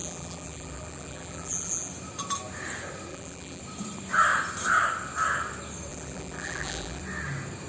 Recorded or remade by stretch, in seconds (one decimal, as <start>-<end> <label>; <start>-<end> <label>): 0.0-1.9 remade; 1.9-3.1 recorded; 3.1-3.6 remade; 3.6-5.9 recorded; 5.9-7.0 remade; 7.0-7.7 recorded